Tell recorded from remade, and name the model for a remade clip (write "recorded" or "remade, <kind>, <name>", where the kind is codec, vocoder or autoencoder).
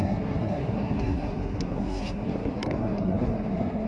remade, codec, SNAC